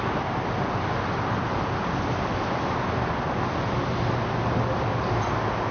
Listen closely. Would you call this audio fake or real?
real